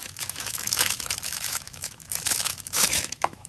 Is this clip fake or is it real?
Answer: fake